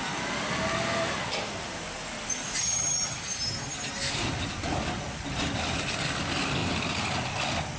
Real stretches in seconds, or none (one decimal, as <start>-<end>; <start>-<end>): 0.0-2.6; 3.2-7.8